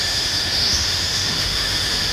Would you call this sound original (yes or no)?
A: no